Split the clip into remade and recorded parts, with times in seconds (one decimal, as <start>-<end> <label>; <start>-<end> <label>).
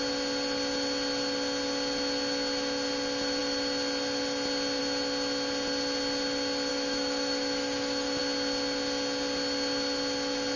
0.0-6.7 recorded; 6.7-8.2 remade; 8.2-10.6 recorded